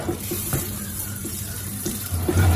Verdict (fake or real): fake